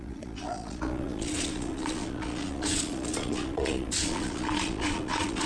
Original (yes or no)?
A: no